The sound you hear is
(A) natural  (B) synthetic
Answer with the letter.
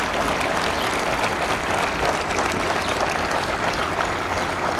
A